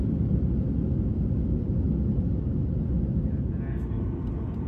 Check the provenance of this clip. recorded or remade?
recorded